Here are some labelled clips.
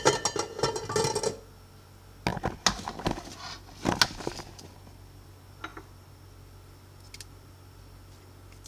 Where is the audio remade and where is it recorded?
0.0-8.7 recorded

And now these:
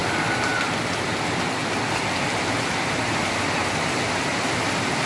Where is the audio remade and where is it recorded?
0.0-5.1 recorded

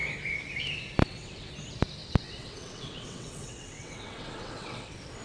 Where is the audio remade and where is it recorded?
0.0-1.0 recorded; 1.0-1.5 remade; 1.5-2.0 recorded; 2.0-5.2 remade

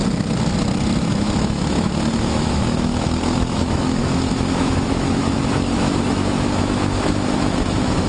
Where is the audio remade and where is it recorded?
0.0-1.1 recorded; 1.1-8.1 remade

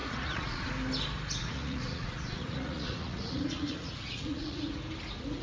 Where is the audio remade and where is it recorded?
0.0-0.7 remade; 0.7-1.4 recorded; 1.4-4.6 remade; 4.6-5.4 recorded